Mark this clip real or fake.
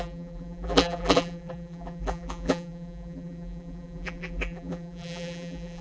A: fake